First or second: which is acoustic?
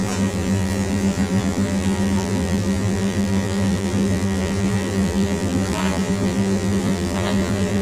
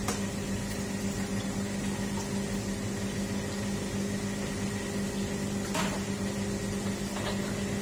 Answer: second